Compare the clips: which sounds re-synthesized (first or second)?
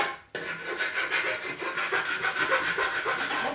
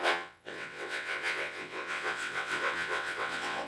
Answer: second